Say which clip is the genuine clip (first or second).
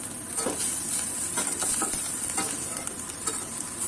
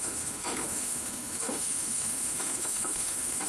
first